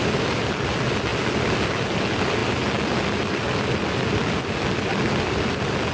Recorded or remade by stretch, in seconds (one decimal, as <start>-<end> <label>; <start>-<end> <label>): 0.0-5.9 recorded